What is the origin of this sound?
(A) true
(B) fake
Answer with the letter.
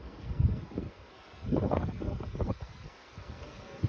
B